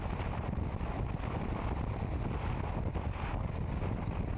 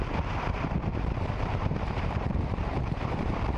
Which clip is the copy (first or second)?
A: second